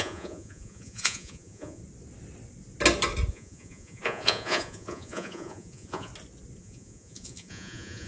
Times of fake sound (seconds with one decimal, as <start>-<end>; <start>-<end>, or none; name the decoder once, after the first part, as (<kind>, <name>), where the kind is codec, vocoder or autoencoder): 0.0-1.8 (vocoder, Vocos); 3.3-6.1; 6.6-8.1

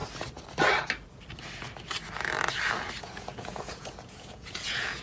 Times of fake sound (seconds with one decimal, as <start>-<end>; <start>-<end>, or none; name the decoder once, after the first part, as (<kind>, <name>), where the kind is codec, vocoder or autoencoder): 3.0-5.0 (vocoder, Vocos)

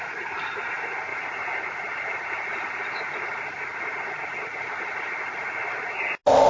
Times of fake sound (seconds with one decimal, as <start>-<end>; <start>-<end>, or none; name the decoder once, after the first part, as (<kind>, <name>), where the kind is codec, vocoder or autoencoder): none

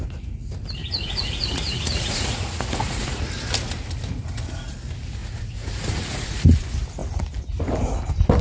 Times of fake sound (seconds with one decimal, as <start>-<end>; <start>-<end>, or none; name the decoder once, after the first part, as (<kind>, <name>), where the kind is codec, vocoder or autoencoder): 0.8-3.3 (vocoder, Vocos); 5.2-6.6

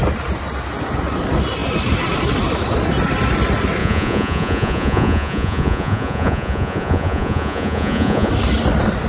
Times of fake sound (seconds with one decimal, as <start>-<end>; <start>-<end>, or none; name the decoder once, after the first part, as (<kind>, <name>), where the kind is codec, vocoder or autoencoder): 3.8-8.3 (vocoder, Vocos)

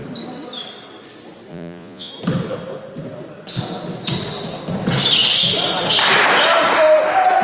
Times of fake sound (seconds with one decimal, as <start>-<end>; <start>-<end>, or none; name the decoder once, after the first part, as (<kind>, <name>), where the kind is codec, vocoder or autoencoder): 1.5-2.1 (vocoder, Vocos)

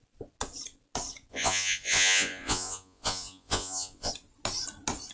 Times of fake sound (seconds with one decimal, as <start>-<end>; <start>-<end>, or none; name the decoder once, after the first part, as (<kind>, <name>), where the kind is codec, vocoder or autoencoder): 1.3-4.1 (vocoder, Vocos)